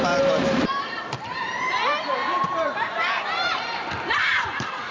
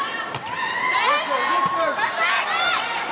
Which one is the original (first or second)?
second